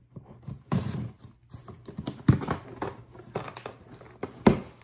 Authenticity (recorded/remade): recorded